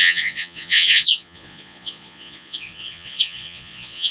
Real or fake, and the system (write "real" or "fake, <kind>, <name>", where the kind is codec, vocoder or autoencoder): fake, vocoder, Vocos